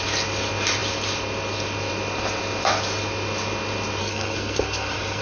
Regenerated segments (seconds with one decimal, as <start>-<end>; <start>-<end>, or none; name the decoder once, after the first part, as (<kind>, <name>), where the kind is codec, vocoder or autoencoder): 4.0-5.2 (codec, SNAC)